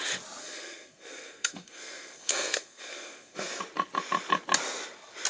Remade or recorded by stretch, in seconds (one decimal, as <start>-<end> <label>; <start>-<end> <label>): 0.0-0.4 recorded; 0.4-3.6 remade; 3.6-5.3 recorded